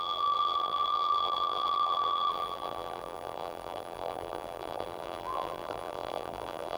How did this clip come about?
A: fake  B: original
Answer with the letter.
A